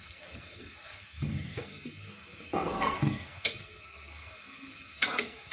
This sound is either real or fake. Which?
fake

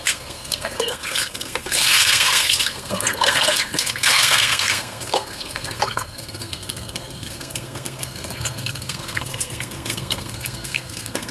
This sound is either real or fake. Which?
fake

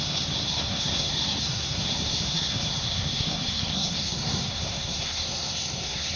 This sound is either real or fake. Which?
fake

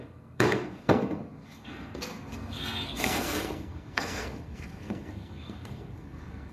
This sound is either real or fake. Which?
fake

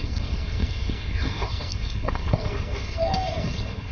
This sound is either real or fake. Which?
fake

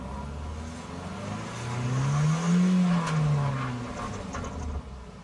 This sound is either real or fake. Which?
real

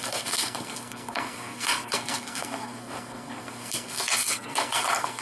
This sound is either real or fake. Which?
fake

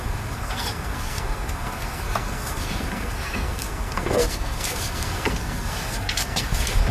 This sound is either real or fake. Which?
fake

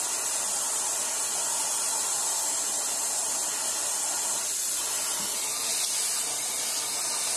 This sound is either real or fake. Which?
real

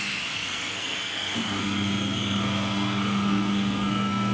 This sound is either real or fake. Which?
fake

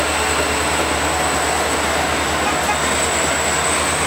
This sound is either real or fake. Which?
real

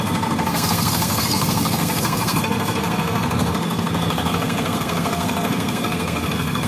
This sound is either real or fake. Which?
fake